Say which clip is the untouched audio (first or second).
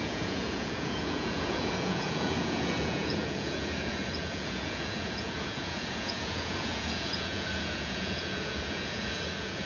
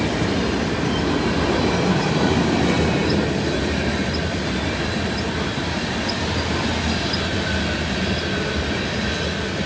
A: second